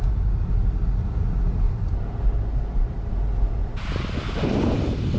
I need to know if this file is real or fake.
real